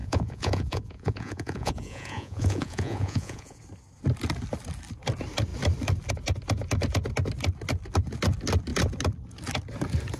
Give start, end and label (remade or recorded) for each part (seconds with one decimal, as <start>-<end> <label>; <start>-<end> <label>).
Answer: 0.0-3.6 remade; 3.6-10.2 recorded